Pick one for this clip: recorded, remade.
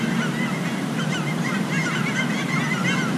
recorded